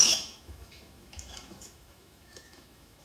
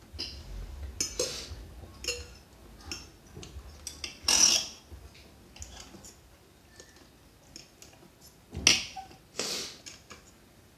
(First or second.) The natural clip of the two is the second